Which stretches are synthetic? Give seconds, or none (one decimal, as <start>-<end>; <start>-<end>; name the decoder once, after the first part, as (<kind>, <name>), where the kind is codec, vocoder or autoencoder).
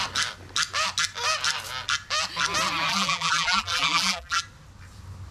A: 2.9-4.4 (vocoder, BigVGAN v2)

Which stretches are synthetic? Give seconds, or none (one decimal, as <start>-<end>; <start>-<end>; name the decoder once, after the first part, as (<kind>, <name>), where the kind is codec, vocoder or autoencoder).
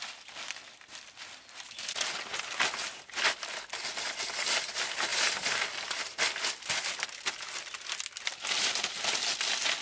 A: none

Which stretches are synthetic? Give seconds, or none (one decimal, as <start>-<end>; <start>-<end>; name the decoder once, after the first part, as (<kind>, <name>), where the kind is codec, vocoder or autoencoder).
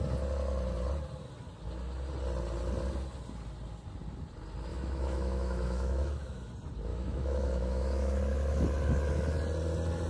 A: 4.7-6.5 (autoencoder, DAC-VAE); 6.9-8.2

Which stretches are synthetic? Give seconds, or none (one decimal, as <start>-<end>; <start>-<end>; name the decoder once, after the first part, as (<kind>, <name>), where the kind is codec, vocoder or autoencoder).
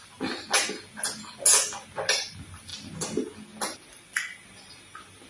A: none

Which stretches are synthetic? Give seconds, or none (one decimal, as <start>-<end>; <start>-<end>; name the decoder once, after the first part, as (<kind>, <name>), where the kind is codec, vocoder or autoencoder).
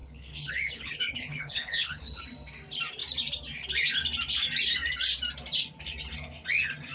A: 0.0-2.2 (codec, HILCodec)